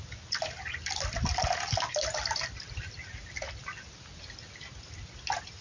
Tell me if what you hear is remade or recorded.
recorded